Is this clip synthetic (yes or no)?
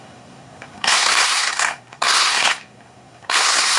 yes